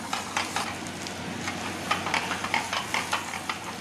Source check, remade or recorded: recorded